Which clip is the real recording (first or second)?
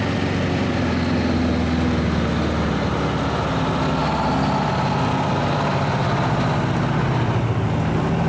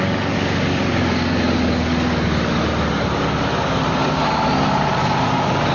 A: first